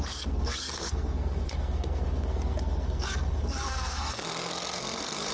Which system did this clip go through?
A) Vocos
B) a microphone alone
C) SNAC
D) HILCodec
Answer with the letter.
C